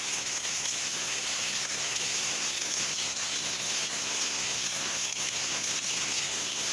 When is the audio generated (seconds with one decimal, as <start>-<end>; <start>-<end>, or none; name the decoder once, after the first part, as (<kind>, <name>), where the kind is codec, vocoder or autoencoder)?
0.0-6.7 (codec, SNAC)